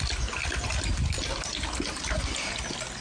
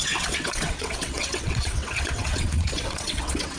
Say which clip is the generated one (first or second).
second